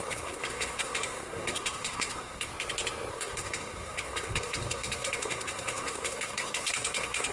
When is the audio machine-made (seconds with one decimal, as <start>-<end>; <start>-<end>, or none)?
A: 0.0-2.5; 3.1-7.3